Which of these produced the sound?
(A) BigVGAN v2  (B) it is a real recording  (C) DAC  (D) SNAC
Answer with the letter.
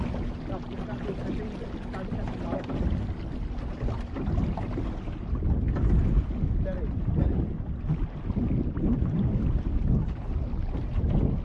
B